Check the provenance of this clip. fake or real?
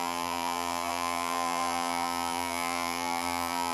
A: fake